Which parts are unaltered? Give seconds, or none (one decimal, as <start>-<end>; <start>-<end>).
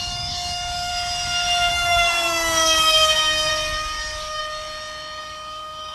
0.9-1.7; 3.5-4.0; 4.4-5.2